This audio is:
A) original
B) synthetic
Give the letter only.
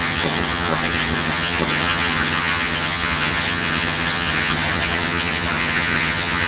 B